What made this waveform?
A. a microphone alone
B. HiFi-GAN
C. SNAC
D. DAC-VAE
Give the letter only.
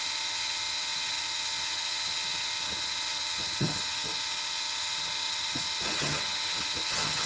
B